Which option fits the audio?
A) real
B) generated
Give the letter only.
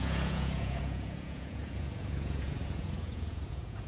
B